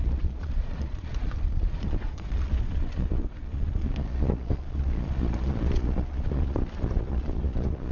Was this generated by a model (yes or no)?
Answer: yes